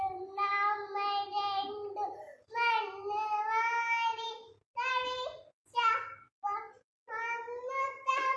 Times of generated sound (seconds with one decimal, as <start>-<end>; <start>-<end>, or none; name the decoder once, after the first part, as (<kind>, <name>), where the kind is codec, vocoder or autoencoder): none